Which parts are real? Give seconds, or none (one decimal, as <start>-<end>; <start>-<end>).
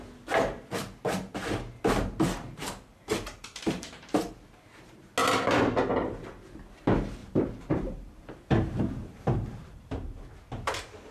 0.0-2.9; 4.3-7.2; 10.2-11.1